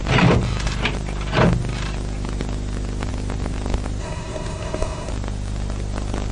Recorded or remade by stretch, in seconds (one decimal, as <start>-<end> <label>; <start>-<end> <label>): 0.0-4.0 recorded; 4.0-5.1 remade; 5.1-6.3 recorded